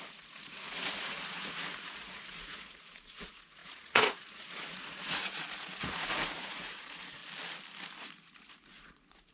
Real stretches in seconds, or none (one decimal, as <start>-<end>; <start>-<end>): 7.2-8.0